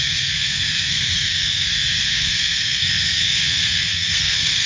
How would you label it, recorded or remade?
remade